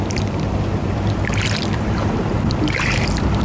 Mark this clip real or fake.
fake